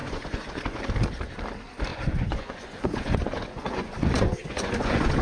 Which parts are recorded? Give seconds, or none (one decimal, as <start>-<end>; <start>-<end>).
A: 0.8-1.9